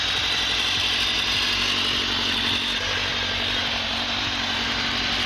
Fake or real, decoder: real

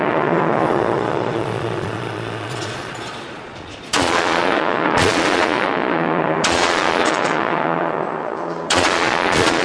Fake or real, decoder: fake, vocoder, Vocos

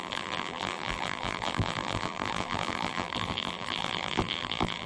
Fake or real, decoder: fake, vocoder, BigVGAN v2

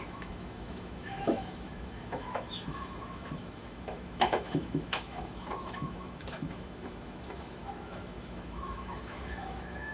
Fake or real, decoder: fake, autoencoder, DAC-VAE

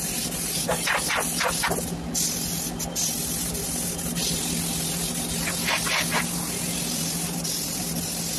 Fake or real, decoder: real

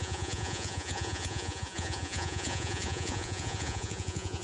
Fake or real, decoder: fake, vocoder, Vocos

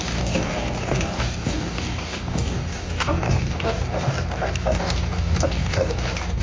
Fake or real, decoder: fake, codec, DAC